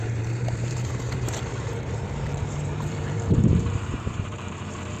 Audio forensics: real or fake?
fake